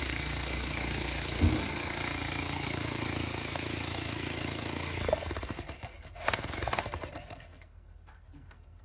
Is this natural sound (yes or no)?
no